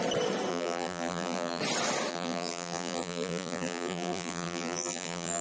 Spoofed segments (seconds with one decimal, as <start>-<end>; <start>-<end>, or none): 0.5-1.6; 2.1-5.4